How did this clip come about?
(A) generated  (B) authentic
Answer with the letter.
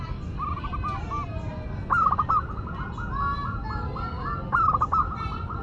B